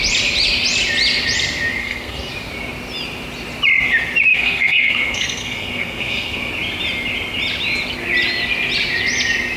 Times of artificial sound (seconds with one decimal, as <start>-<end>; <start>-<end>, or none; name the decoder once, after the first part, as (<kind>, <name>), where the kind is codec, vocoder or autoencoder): 1.8-2.3 (codec, SNAC); 4.3-6.5